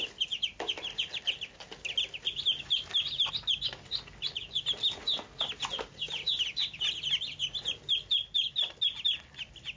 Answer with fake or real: real